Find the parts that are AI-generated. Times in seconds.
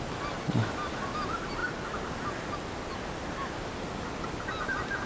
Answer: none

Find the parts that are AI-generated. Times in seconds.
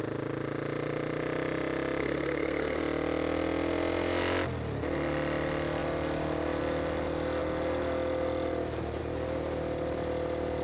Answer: 2.0-2.8 (codec, SNAC)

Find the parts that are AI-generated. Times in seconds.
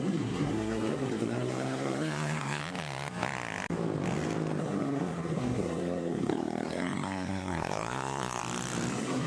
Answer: 0.0-2.6 (codec, SNAC); 4.6-8.4; 8.9-9.3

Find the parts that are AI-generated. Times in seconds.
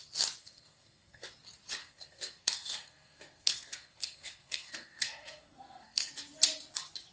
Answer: 0.4-1.3 (codec, SNAC); 1.8-6.1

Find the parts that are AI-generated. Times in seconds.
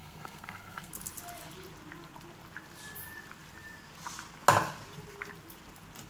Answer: 0.0-0.9 (codec, SNAC)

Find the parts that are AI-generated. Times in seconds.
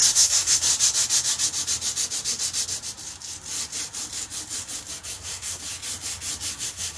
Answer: 0.0-0.7 (codec, SNAC); 4.9-5.7; 6.5-7.0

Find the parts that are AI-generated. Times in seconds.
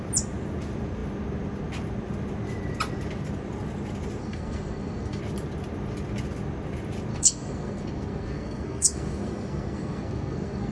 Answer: 4.2-5.2 (codec, SNAC); 7.1-10.7